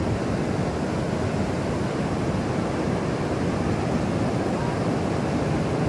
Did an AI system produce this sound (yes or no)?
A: no